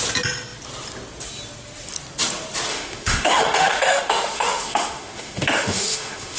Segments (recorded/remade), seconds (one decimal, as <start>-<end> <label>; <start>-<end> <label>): 0.0-2.7 recorded; 2.7-6.4 remade